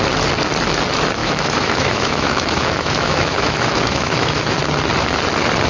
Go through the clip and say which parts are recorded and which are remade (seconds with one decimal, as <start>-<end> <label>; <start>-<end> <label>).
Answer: 0.0-1.2 recorded; 1.2-4.6 remade; 4.6-5.7 recorded